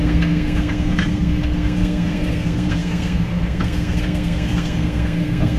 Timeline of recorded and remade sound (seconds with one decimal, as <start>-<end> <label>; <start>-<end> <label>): 0.0-5.6 remade